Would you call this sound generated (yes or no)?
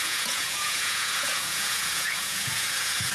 yes